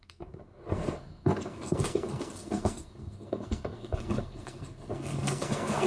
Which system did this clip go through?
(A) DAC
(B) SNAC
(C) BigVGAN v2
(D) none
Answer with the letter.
B